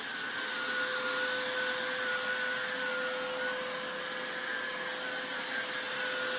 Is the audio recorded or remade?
recorded